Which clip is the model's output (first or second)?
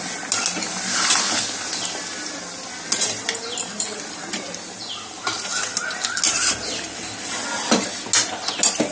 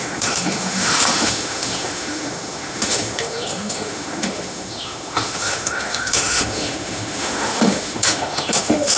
second